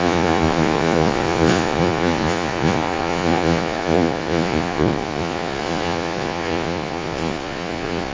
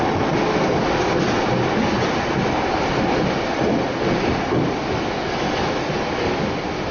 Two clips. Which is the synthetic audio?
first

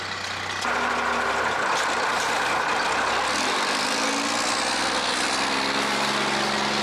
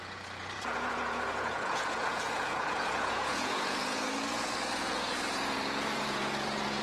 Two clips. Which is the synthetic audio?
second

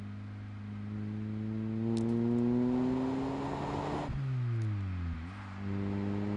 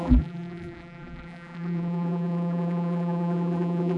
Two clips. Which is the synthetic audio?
second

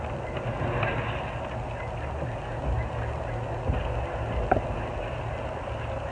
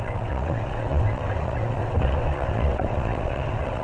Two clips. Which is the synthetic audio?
second